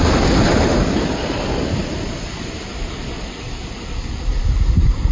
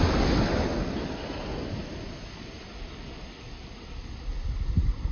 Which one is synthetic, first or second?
first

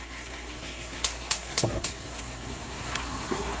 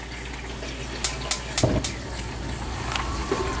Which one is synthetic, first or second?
first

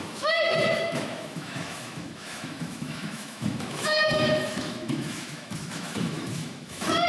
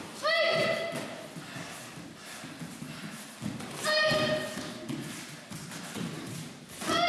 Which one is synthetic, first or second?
first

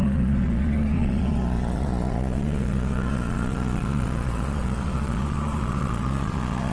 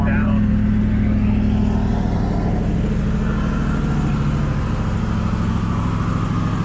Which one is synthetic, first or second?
first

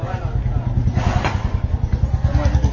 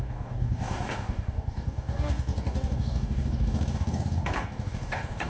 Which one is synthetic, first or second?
second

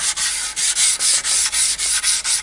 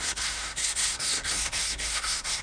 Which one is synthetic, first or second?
second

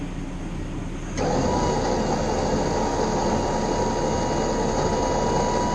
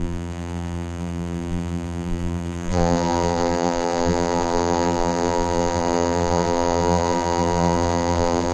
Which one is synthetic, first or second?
second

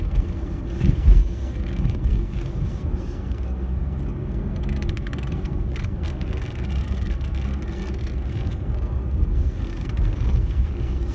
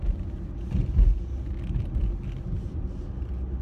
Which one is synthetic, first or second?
first